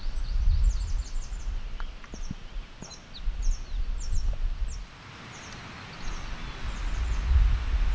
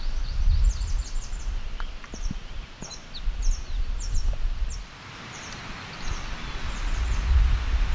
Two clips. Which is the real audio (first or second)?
first